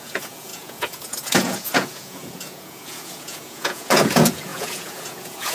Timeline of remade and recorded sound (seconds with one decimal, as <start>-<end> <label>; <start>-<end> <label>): 0.0-5.5 remade